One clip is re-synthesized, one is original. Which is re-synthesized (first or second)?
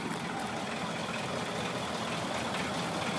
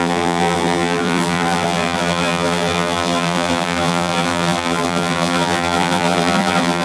second